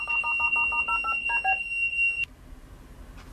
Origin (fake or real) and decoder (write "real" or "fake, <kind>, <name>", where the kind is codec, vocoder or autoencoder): real